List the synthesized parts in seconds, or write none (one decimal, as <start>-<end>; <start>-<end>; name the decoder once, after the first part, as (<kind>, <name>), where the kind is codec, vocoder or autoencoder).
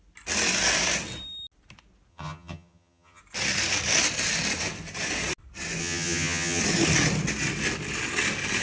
2.1-3.2 (vocoder, HiFi-GAN); 5.8-6.6